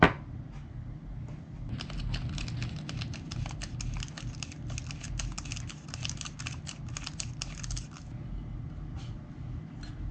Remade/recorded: recorded